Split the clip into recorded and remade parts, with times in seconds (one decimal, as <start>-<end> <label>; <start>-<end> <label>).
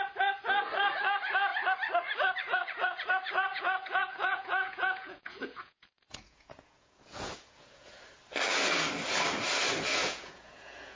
0.0-3.5 recorded; 3.5-7.9 remade; 7.9-10.0 recorded; 10.0-11.0 remade